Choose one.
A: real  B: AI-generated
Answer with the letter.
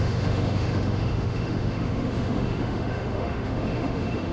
B